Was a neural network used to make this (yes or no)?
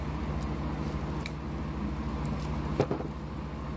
no